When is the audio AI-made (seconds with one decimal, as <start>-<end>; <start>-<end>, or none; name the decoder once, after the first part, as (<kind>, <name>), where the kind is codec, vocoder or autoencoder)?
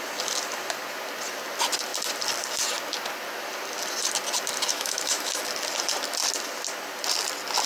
4.7-5.4 (autoencoder, DAC-VAE)